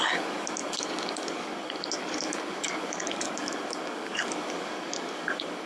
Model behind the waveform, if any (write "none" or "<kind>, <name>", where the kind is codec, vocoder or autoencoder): codec, DAC